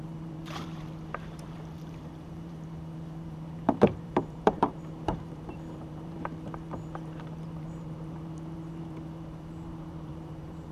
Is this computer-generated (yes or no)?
yes